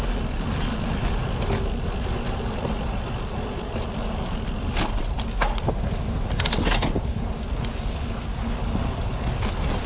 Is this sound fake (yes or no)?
no